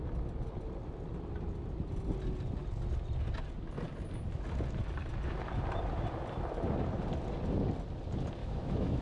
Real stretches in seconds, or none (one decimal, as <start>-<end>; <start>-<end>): 0.0-8.4